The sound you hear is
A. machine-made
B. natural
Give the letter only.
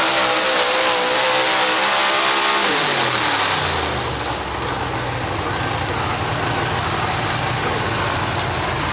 B